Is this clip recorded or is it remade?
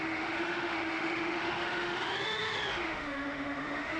remade